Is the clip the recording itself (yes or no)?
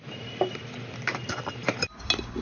yes